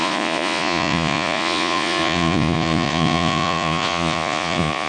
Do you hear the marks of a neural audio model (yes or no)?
yes